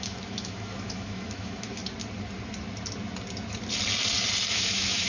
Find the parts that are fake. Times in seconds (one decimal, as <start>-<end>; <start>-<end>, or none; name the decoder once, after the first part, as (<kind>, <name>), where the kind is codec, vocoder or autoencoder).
0.0-1.8 (autoencoder, DAC-VAE); 4.5-5.1